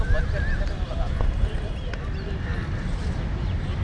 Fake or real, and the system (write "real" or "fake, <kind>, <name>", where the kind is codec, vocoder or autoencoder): real